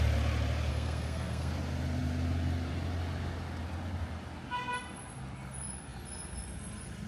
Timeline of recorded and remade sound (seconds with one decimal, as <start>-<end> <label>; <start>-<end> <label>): 0.0-0.7 recorded; 0.7-1.5 remade; 1.5-7.1 recorded